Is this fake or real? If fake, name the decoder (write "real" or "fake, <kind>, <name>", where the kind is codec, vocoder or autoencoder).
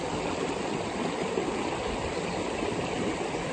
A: real